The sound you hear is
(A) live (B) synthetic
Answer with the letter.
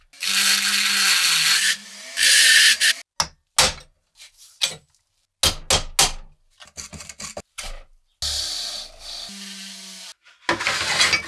A